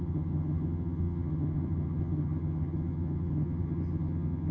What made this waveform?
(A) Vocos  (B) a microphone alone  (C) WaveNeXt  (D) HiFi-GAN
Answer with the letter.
D